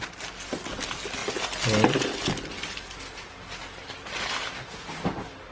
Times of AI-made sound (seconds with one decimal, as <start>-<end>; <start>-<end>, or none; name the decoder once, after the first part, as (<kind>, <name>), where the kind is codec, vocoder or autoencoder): none